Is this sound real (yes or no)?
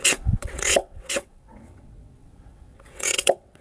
no